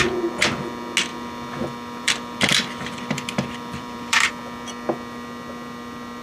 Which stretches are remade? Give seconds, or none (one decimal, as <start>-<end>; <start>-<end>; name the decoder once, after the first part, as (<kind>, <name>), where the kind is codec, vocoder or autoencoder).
1.1-4.3 (vocoder, BigVGAN v2)